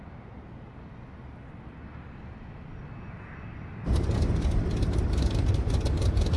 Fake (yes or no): no